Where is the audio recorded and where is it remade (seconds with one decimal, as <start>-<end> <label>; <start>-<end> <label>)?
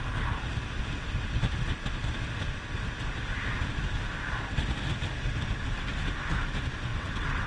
0.0-6.9 recorded; 6.9-7.5 remade